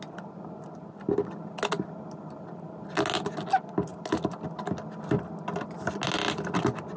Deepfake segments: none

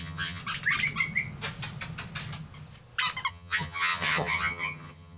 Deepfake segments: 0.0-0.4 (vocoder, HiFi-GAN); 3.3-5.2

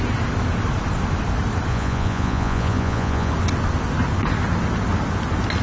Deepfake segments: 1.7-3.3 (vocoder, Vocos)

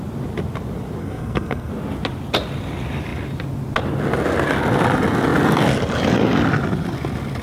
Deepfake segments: 1.0-1.7 (codec, SNAC)

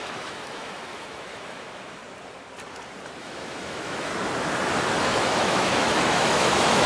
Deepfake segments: 0.0-2.0 (autoencoder, DAC-VAE); 3.2-4.1; 5.0-6.9

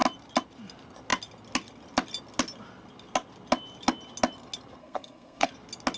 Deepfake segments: 4.8-5.5 (codec, SNAC)